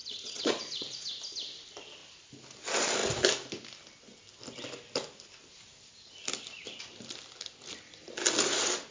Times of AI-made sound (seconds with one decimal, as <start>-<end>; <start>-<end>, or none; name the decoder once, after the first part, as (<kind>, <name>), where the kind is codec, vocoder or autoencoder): 0.0-1.1 (vocoder, Vocos)